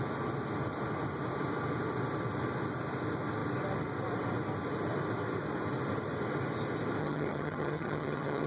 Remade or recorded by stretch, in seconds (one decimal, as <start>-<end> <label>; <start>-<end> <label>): 0.0-7.0 recorded; 7.0-8.5 remade